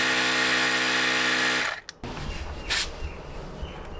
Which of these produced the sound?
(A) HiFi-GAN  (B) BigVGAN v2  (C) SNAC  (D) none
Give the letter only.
D